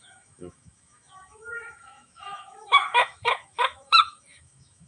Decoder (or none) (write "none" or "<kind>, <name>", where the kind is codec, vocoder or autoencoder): autoencoder, DAC-VAE